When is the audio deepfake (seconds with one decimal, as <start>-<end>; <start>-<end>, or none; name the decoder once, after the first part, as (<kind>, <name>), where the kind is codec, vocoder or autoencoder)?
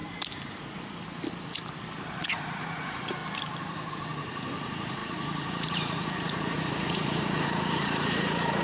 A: 2.2-3.2 (vocoder, Vocos); 3.9-8.6